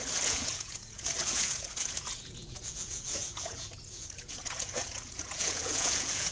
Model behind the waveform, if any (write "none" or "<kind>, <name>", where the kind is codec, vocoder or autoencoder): vocoder, Vocos